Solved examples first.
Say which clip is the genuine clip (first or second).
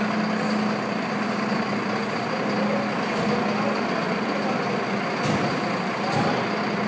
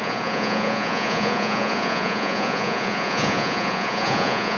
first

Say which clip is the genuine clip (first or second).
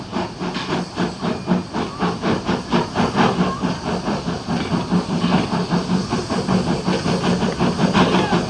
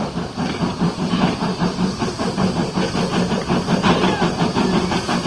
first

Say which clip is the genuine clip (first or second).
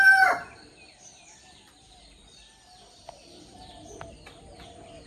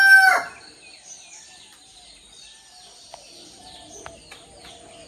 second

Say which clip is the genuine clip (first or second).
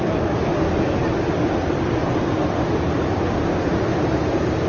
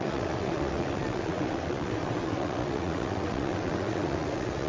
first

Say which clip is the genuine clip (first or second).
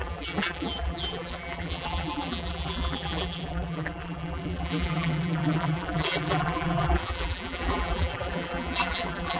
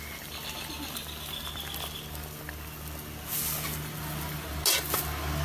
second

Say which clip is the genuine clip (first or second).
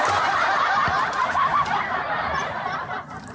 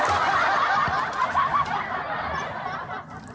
second